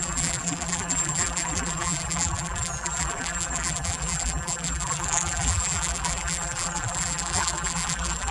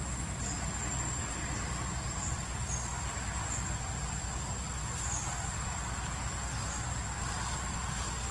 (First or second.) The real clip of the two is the second